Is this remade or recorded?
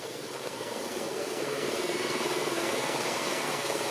remade